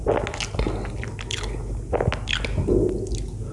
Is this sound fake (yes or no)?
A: no